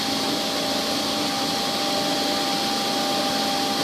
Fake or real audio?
real